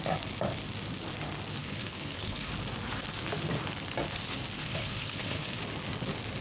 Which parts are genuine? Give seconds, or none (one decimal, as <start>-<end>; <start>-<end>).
0.0-1.6; 2.5-4.6; 5.6-6.4